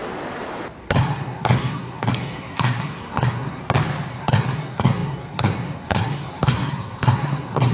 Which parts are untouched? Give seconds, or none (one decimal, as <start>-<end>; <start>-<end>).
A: 0.0-0.8; 3.6-4.1